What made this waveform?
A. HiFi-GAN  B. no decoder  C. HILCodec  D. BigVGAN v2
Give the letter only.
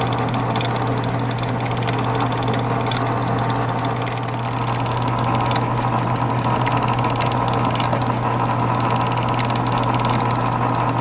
B